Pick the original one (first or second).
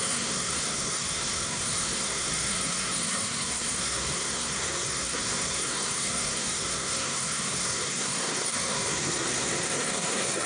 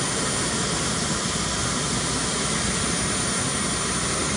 second